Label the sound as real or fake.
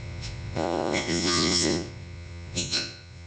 fake